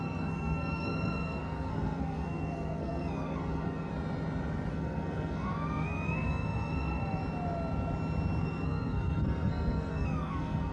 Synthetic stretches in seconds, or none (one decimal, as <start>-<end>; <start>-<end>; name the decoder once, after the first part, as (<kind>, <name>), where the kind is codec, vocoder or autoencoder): 0.0-3.9 (codec, SNAC); 4.7-7.2; 8.4-10.7